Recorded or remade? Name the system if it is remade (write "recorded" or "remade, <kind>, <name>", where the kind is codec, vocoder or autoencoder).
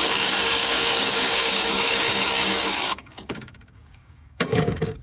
remade, codec, DAC